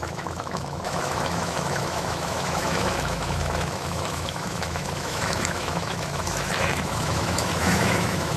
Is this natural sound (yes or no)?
no